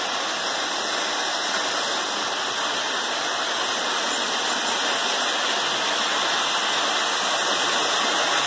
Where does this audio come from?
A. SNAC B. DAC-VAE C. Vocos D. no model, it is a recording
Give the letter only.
D